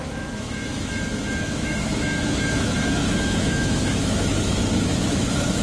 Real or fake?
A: fake